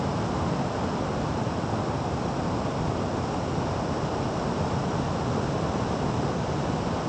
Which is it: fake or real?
real